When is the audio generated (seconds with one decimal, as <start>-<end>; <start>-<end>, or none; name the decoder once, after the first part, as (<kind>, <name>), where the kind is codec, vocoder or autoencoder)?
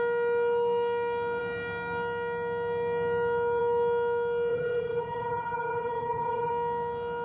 4.5-6.5 (vocoder, HiFi-GAN)